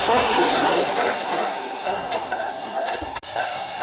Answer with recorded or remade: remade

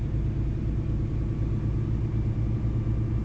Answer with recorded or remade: recorded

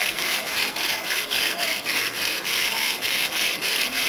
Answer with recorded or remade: remade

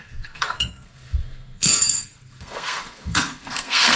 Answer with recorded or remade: remade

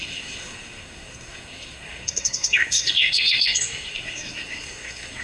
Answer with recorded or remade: remade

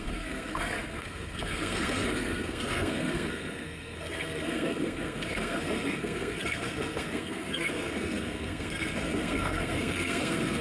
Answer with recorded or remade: remade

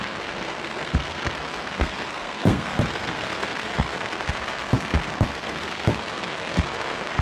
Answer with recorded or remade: remade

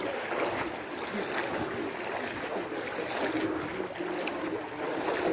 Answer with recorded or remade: recorded